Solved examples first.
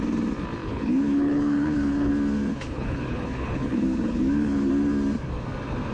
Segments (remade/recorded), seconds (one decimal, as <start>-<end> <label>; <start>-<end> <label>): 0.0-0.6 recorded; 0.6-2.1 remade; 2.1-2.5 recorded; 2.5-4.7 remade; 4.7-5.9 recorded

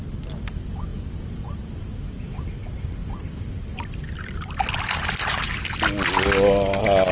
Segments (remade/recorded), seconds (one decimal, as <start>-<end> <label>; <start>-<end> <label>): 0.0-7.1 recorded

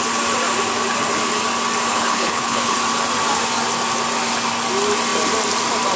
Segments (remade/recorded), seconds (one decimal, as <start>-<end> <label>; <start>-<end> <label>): 0.0-1.9 recorded; 1.9-2.8 remade; 2.8-6.0 recorded

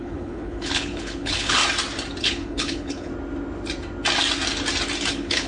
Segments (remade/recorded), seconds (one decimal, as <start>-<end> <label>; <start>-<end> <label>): 0.0-1.6 remade; 1.6-2.2 recorded; 2.2-3.1 remade; 3.1-5.1 recorded; 5.1-5.5 remade

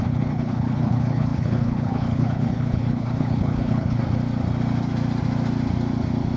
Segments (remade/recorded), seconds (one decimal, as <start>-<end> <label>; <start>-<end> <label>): 0.0-4.0 remade; 4.0-6.4 recorded